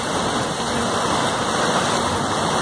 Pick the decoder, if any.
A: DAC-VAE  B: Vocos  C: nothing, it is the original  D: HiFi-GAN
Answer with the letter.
C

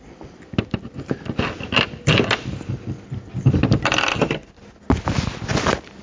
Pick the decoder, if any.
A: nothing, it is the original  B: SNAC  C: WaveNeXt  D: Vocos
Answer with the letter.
A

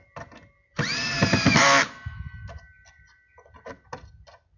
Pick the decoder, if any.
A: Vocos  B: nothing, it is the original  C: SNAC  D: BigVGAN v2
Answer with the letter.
B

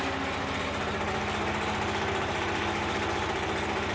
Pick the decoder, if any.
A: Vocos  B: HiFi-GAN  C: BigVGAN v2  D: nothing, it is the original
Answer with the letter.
D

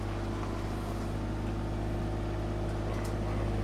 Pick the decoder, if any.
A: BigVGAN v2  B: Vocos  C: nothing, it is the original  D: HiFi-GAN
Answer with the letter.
C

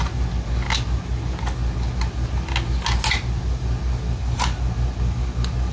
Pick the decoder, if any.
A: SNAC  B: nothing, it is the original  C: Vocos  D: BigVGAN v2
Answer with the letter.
B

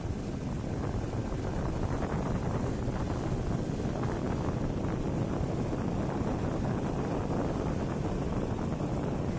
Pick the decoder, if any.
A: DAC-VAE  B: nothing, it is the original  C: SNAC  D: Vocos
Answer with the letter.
B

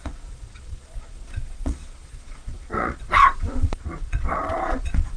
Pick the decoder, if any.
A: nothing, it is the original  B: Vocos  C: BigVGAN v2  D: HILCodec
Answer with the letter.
B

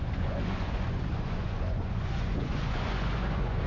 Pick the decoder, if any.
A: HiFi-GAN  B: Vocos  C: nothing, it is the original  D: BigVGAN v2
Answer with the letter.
B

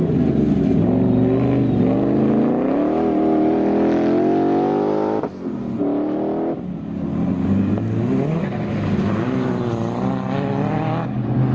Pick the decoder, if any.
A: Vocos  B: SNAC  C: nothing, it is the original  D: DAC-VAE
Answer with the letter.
C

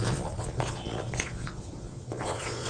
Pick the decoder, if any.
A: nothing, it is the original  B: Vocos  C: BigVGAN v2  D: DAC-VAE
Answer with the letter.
B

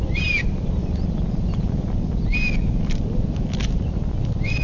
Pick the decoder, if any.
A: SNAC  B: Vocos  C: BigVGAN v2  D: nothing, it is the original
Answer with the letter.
D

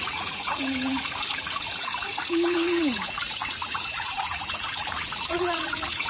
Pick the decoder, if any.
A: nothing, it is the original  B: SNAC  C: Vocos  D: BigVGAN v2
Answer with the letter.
C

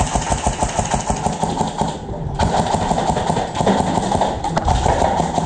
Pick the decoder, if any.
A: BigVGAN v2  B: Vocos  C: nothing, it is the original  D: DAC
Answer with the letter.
C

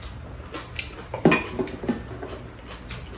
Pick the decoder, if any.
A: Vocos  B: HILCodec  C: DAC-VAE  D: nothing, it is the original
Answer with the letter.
D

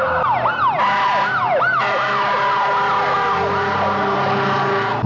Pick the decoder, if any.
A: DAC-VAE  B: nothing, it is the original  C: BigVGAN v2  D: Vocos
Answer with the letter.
B